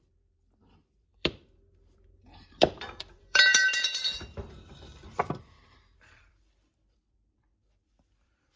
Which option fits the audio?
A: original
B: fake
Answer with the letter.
B